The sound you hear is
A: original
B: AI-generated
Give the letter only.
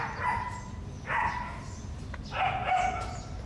A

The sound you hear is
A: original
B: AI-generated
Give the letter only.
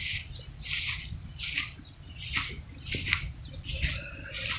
A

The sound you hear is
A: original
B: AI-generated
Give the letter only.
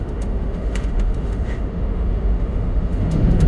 B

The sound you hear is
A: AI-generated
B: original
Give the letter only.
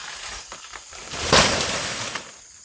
A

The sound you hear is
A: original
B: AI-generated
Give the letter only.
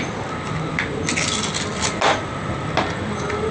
A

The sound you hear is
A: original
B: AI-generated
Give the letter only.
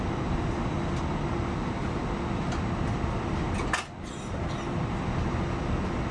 A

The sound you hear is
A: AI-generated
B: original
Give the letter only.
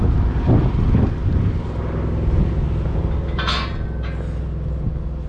B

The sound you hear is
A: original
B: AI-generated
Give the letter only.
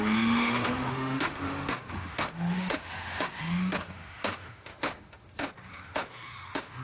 B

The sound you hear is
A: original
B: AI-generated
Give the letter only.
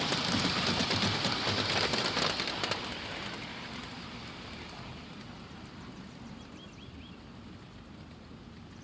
A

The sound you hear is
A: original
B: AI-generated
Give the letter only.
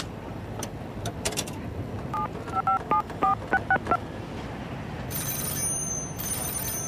B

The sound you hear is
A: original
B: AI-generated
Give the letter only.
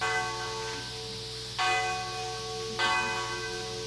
A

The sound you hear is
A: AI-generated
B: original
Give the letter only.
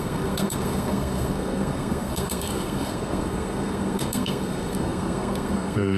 A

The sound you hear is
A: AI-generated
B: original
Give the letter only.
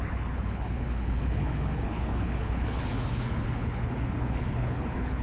A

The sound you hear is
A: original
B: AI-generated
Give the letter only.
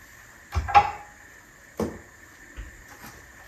A